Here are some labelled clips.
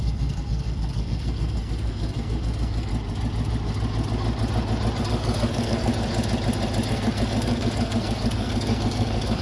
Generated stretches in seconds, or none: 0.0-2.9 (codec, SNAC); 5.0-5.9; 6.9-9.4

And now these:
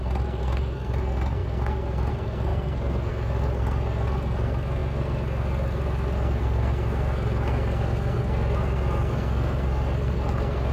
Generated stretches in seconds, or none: 0.0-10.7 (codec, SNAC)